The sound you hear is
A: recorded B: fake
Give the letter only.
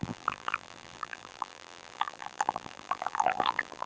B